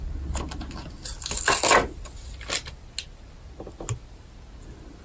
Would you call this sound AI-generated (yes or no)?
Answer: no